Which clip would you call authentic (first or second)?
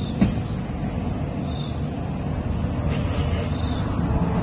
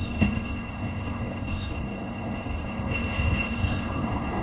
first